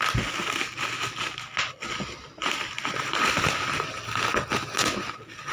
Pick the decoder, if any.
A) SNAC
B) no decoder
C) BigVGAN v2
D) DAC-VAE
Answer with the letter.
B